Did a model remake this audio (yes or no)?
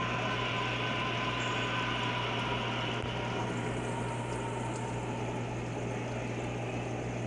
no